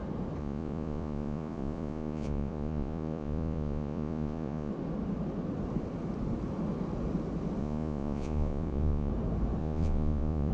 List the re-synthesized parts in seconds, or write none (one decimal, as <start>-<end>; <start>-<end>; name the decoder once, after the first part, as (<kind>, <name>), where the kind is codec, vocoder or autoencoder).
0.4-4.7 (vocoder, Vocos); 7.6-9.1; 9.6-10.5